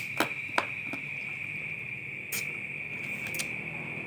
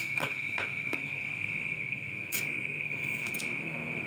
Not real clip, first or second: second